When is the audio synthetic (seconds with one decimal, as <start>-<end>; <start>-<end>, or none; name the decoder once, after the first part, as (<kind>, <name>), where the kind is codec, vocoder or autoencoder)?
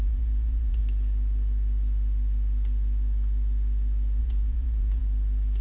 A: 0.0-0.8 (vocoder, Vocos); 4.2-5.0